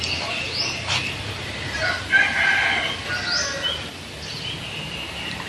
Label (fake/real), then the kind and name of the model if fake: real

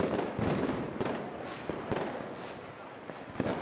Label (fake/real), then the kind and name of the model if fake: real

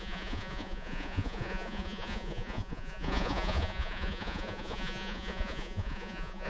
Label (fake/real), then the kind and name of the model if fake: fake, vocoder, Vocos